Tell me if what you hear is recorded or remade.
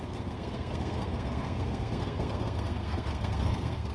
remade